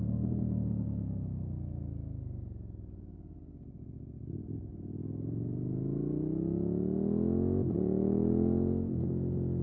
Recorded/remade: recorded